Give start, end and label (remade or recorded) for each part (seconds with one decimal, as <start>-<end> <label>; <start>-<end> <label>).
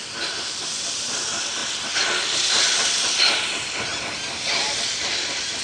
0.0-5.6 recorded